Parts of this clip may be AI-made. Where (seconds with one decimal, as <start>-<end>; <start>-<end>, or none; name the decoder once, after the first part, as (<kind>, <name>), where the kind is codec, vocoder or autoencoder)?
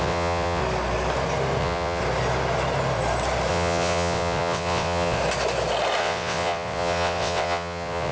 0.0-0.6 (vocoder, WaveNeXt); 1.6-2.0; 3.5-5.2; 6.0-8.1